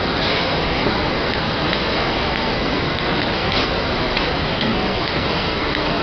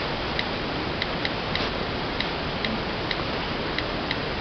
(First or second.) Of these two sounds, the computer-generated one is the first